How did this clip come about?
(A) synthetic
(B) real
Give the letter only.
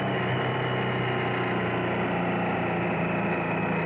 B